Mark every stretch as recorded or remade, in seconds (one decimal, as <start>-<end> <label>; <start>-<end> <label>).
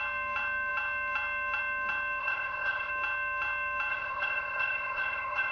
0.0-2.2 recorded; 2.2-2.9 remade; 2.9-3.9 recorded; 3.9-5.5 remade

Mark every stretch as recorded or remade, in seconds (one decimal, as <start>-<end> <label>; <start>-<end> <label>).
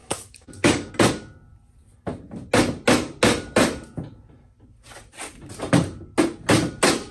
0.0-0.9 remade; 0.9-7.1 recorded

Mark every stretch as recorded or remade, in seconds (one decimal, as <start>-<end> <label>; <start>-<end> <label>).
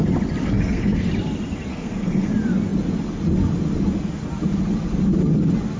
0.0-0.4 recorded; 0.4-1.1 remade; 1.1-1.7 recorded; 1.7-2.3 remade; 2.3-5.8 recorded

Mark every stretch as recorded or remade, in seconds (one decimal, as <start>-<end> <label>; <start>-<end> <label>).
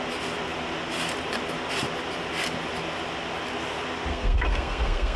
0.0-4.1 recorded; 4.1-5.2 remade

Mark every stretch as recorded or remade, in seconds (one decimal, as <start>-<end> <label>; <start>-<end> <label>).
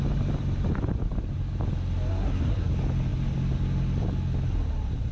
0.0-2.1 recorded; 2.1-2.7 remade; 2.7-5.1 recorded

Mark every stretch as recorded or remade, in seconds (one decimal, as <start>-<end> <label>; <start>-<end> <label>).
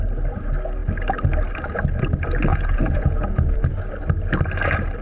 0.0-2.5 recorded; 2.5-3.9 remade; 3.9-5.0 recorded